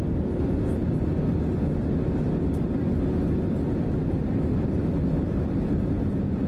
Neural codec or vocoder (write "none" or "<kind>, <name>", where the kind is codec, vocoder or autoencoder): none